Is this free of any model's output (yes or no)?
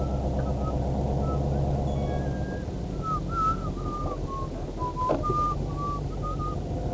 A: yes